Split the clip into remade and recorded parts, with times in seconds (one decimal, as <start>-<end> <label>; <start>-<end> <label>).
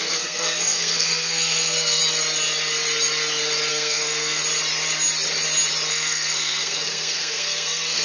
0.0-2.0 remade; 2.0-3.7 recorded; 3.7-4.4 remade; 4.4-5.9 recorded; 5.9-8.0 remade